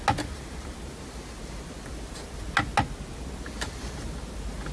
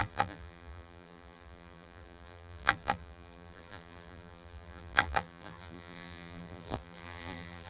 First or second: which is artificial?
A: second